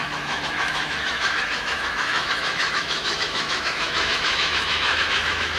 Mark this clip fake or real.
fake